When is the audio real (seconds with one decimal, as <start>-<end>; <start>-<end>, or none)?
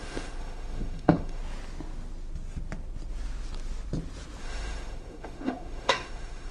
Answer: 1.4-4.4